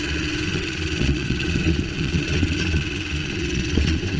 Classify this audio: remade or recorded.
remade